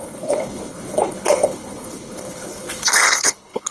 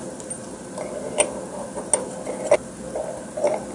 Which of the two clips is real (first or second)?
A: second